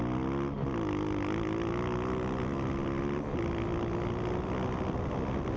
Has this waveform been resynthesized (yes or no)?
no